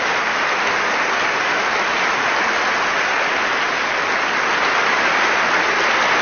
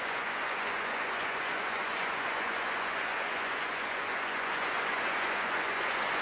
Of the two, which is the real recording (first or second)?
first